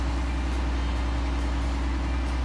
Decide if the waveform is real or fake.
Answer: real